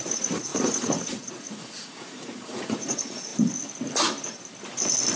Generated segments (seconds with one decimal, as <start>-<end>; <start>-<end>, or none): 0.0-3.3